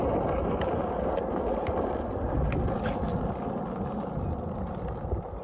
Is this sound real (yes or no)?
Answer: yes